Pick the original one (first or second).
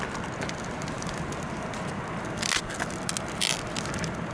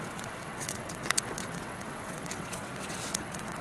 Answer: first